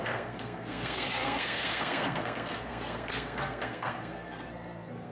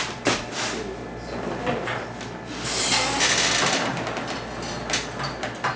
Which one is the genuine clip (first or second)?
second